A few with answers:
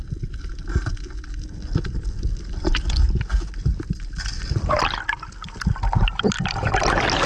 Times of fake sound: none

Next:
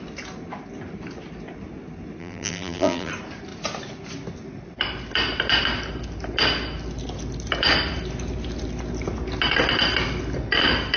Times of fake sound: 2.2-3.1 (vocoder, BigVGAN v2)

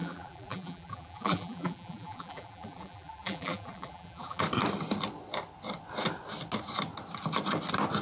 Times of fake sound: 0.0-4.4 (vocoder, BigVGAN v2)

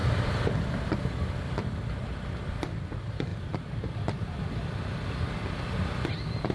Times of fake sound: 0.0-0.5 (vocoder, BigVGAN v2); 3.3-4.5

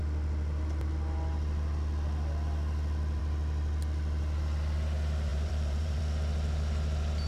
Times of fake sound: 5.3-6.0 (vocoder, BigVGAN v2)